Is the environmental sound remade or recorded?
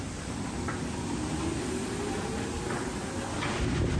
recorded